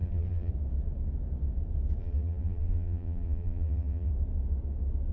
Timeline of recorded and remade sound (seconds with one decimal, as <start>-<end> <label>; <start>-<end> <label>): 0.0-0.5 remade; 0.5-2.0 recorded; 2.0-4.1 remade; 4.1-5.1 recorded